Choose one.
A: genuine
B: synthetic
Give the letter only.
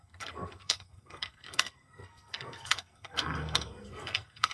B